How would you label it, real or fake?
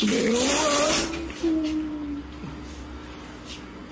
real